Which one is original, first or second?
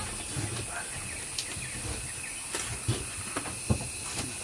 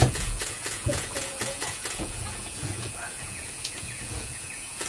first